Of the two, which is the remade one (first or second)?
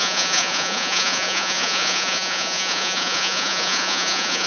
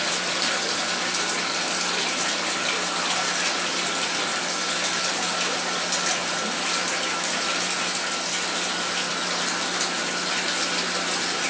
first